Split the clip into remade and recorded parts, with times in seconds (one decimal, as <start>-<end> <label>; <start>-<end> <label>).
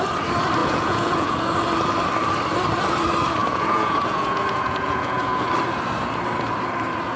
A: 0.0-0.6 recorded; 0.6-1.4 remade; 1.4-3.4 recorded; 3.4-5.5 remade; 5.5-7.2 recorded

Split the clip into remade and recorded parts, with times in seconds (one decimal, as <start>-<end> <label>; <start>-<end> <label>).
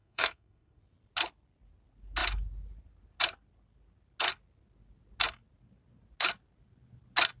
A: 0.0-0.8 remade; 0.8-7.4 recorded